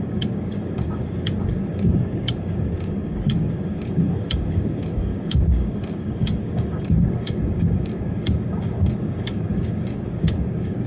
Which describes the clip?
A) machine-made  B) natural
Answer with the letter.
A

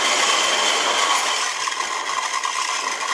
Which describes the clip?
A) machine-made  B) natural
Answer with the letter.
B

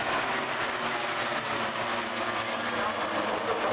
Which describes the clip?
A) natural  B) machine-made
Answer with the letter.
A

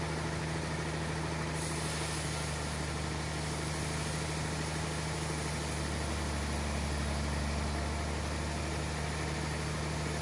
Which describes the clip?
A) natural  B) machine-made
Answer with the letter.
A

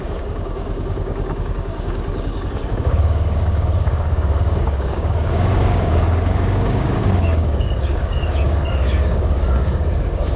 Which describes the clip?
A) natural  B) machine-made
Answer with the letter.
B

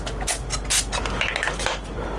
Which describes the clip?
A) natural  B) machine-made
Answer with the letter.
A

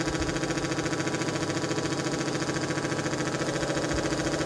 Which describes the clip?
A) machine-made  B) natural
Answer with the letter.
B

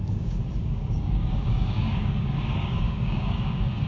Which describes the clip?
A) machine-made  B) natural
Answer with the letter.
A